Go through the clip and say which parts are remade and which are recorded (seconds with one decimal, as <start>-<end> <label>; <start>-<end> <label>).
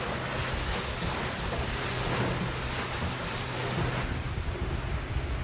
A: 0.0-5.4 recorded